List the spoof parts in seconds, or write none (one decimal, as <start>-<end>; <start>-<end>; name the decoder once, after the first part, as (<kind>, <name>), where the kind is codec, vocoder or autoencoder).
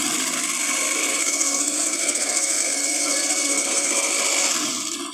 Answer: 1.0-4.1 (codec, SNAC)